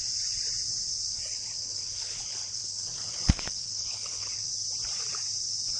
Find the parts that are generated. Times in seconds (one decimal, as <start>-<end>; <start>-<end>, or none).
1.1-4.5